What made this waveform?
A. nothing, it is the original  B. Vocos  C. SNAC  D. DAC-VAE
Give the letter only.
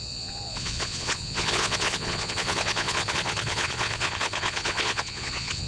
B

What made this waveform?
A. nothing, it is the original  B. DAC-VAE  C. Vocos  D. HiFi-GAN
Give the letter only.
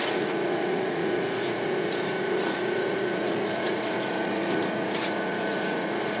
C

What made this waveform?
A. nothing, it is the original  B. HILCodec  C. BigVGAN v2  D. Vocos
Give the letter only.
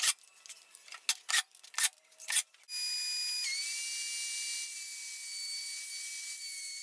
A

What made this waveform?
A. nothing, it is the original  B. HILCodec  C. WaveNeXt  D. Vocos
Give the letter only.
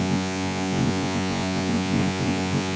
D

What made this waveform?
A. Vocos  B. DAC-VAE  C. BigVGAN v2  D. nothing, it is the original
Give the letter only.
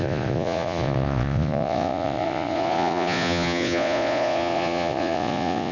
A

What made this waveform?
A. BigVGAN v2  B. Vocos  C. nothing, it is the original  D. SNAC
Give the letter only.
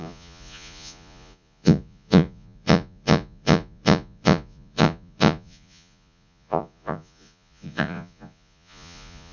B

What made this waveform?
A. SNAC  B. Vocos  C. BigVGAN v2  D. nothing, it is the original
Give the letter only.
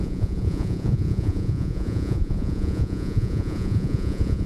B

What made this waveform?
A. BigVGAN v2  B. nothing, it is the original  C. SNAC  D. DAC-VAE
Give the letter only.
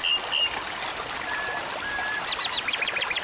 B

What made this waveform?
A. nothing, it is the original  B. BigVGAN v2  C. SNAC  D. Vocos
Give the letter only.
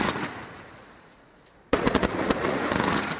D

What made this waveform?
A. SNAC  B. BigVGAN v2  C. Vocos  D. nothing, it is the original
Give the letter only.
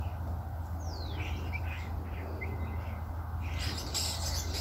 D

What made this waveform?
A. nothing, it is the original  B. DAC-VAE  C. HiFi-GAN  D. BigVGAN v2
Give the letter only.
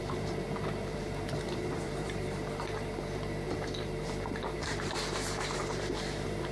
D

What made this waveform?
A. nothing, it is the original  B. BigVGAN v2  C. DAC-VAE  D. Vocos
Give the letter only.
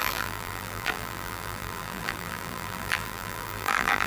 B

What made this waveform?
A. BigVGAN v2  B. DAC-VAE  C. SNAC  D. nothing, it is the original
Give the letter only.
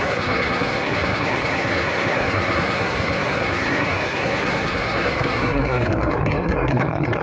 C